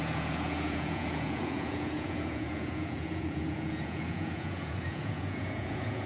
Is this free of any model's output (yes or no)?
no